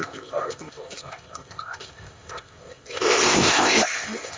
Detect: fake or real fake